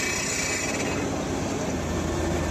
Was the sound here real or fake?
real